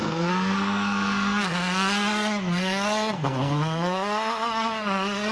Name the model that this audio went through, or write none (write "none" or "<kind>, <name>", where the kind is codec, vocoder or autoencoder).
codec, SNAC